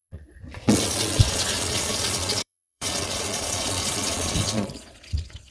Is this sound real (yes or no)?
no